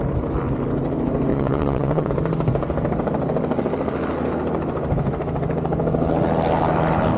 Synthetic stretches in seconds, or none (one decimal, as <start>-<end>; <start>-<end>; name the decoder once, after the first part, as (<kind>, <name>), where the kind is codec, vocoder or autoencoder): 1.3-2.1 (vocoder, WaveNeXt)